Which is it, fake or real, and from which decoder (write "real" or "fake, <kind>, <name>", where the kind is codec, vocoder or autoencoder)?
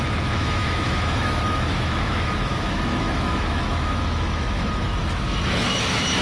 fake, autoencoder, DAC-VAE